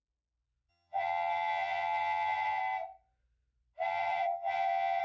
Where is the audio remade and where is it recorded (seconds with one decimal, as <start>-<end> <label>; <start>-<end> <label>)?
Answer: 0.0-0.7 recorded; 0.7-2.6 remade; 2.6-3.9 recorded; 3.9-5.0 remade